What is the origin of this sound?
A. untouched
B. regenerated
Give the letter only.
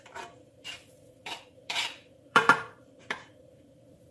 B